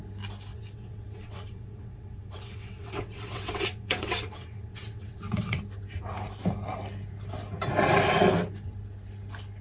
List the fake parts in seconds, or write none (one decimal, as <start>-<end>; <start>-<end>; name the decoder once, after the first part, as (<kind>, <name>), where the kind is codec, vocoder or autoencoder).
0.5-5.6 (vocoder, WaveNeXt)